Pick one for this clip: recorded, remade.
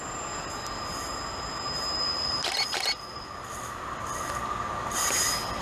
recorded